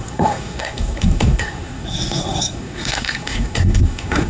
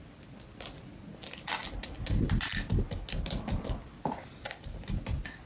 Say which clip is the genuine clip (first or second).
second